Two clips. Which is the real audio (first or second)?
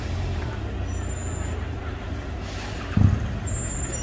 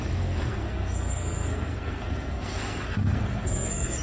first